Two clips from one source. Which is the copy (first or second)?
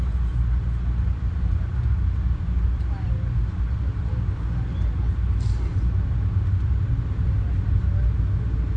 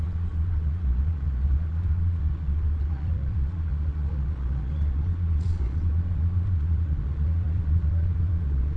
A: second